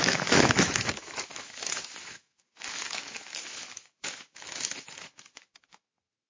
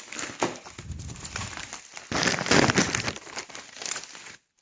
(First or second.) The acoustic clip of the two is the second